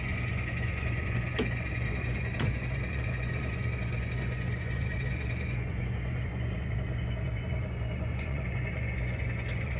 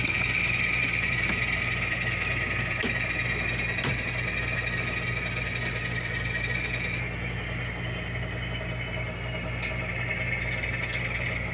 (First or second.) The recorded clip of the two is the second